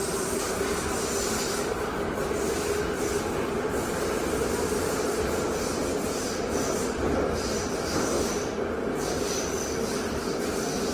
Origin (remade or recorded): recorded